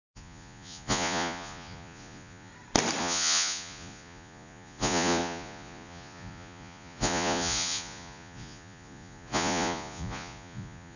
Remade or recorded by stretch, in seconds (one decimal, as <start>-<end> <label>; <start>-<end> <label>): 0.0-2.5 remade; 2.5-3.0 recorded; 3.0-11.0 remade